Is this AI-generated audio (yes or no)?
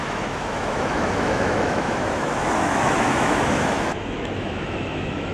yes